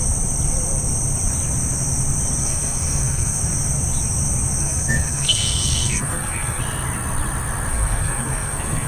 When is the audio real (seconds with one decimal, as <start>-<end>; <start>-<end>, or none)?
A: 0.0-2.4; 3.4-4.6; 6.6-7.7